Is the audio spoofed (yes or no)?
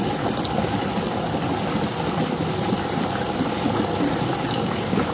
no